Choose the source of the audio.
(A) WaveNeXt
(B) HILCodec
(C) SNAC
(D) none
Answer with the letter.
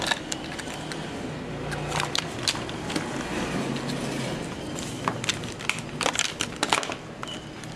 D